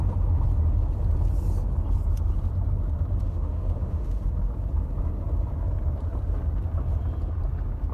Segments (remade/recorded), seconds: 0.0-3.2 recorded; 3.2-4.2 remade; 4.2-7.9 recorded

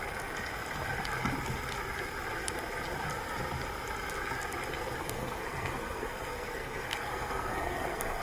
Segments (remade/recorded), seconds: 0.0-5.0 recorded; 5.0-8.2 remade

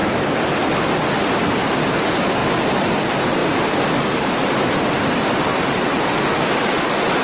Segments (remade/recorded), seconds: 0.0-5.5 recorded; 5.5-6.0 remade; 6.0-7.2 recorded

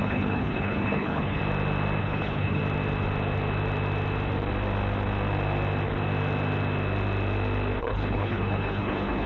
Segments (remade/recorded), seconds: 0.0-1.4 remade; 1.4-2.0 recorded; 2.0-2.6 remade; 2.6-7.8 recorded; 7.8-9.3 remade

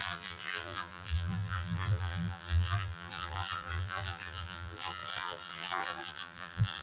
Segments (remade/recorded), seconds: 0.0-6.8 remade

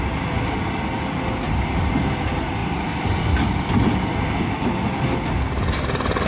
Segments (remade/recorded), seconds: 0.0-6.3 recorded

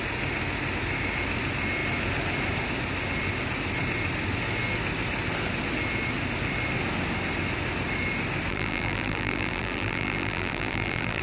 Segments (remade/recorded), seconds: 0.0-8.5 recorded; 8.5-11.2 remade